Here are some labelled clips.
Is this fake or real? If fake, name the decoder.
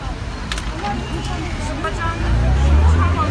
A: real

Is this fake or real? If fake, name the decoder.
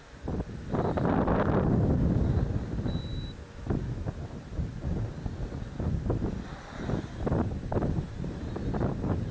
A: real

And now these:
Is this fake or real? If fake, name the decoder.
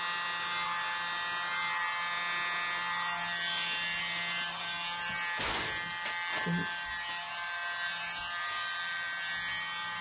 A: real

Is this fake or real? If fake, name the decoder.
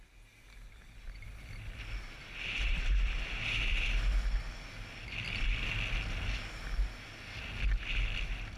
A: real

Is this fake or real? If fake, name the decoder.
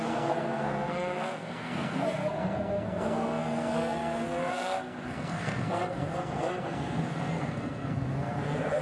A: fake, codec, SNAC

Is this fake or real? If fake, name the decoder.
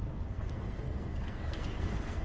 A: fake, codec, SNAC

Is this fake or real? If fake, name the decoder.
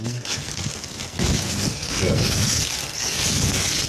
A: fake, codec, SNAC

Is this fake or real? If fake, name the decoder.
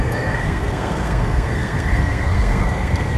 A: fake, codec, SNAC